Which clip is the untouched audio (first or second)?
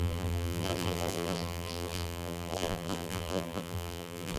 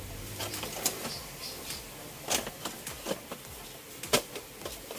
second